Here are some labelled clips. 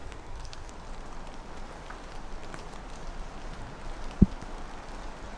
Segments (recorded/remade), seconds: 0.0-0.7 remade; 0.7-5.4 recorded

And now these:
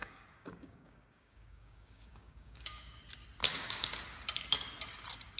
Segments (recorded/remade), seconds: 0.0-3.0 remade; 3.0-3.4 recorded; 3.4-4.0 remade; 4.0-5.4 recorded

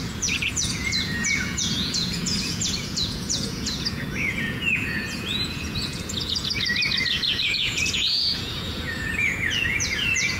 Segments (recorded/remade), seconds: 0.0-6.7 remade; 6.7-7.3 recorded; 7.3-10.4 remade

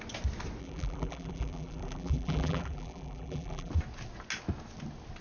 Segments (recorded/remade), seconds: 0.0-0.6 recorded; 0.6-3.7 remade; 3.7-5.2 recorded

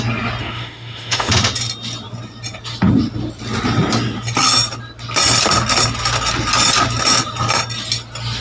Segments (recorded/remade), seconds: 0.0-0.4 recorded; 0.4-1.3 remade; 1.3-8.4 recorded